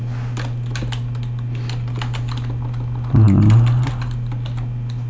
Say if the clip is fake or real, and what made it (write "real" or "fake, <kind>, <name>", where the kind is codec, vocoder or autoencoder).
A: real